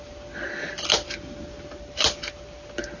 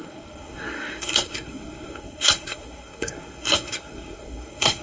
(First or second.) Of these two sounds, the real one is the first